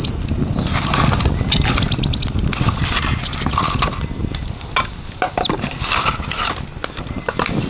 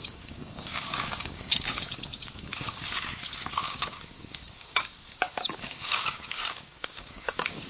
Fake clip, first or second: second